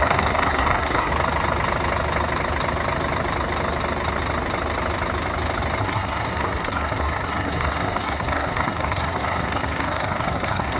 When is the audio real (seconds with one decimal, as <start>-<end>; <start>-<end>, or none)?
1.1-5.8